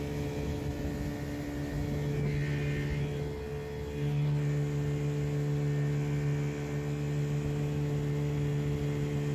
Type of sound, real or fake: real